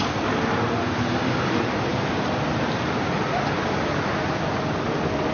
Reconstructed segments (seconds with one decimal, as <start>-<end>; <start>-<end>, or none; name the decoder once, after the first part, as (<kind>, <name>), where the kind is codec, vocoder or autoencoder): none